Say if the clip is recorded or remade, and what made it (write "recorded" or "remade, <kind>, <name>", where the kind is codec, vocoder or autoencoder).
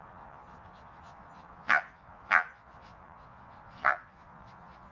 remade, vocoder, Vocos